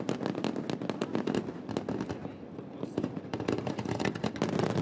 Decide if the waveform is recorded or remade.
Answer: recorded